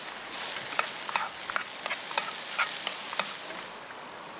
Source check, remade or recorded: recorded